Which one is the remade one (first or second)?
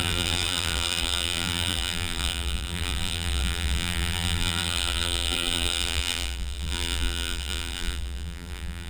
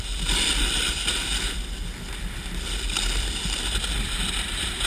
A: first